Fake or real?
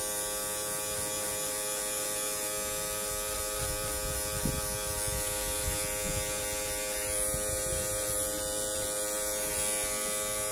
real